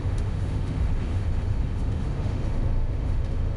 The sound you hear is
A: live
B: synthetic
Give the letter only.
B